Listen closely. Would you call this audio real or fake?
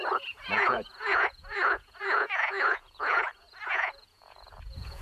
fake